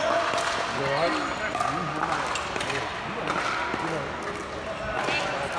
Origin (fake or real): real